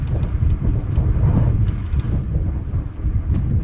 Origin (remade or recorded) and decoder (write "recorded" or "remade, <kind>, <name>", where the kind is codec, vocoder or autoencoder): recorded